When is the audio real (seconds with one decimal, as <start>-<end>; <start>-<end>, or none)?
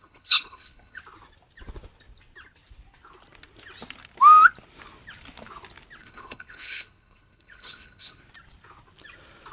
1.0-6.0; 8.2-9.5